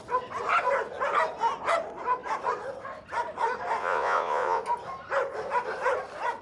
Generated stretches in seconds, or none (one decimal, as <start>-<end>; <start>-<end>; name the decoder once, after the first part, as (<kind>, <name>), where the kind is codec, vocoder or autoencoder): 3.8-4.6 (vocoder, Vocos)